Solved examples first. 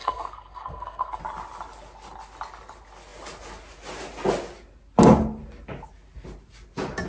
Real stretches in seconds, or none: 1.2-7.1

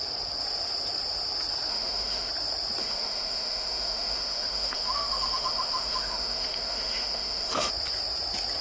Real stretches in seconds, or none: 0.0-1.7; 2.3-2.8; 7.7-8.6

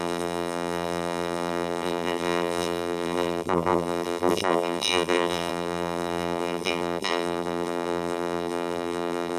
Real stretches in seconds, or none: none

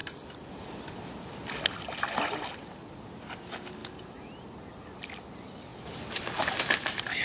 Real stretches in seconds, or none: 0.9-5.7; 6.2-7.2

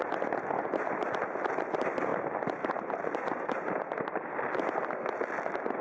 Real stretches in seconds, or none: 0.0-5.8

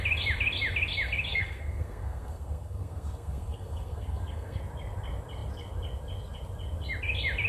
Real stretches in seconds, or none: 0.0-1.3; 4.6-7.5